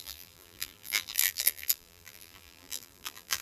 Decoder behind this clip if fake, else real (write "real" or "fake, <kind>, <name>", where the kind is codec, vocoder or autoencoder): fake, vocoder, BigVGAN v2